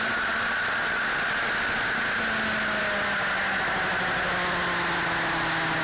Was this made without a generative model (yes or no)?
yes